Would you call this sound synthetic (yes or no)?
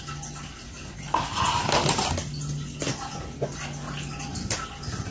no